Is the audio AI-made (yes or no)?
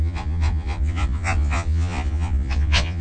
yes